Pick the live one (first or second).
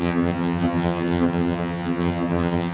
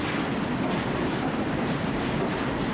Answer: second